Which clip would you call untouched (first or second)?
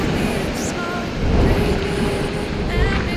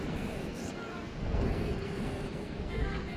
first